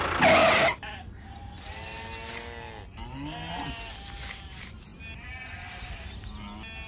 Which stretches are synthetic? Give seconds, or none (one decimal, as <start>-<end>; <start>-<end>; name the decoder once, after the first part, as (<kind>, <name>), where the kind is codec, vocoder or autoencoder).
none